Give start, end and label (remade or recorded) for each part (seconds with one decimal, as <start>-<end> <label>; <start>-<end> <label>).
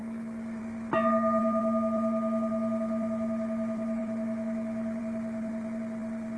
0.0-0.6 remade; 0.6-1.4 recorded; 1.4-5.0 remade; 5.0-6.4 recorded